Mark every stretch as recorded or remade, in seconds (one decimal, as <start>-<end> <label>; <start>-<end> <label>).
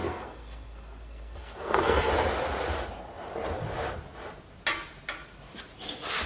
0.0-2.1 remade; 2.1-6.3 recorded